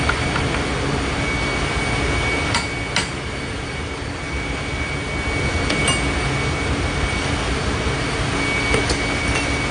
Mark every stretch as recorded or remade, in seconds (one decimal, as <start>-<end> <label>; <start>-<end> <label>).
0.0-9.7 recorded